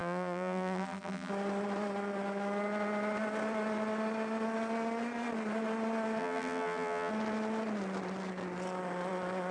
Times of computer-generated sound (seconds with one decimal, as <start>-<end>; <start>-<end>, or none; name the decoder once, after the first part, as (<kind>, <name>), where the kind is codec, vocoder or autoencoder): 0.0-1.3 (vocoder, BigVGAN v2); 6.2-7.1